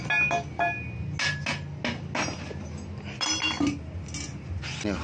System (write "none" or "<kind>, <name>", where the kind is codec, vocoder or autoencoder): none